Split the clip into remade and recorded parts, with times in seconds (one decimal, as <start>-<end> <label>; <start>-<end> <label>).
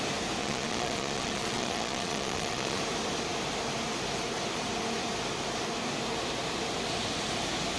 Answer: 0.0-0.4 recorded; 0.4-2.8 remade; 2.8-7.8 recorded